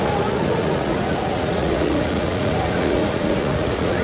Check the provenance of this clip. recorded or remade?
remade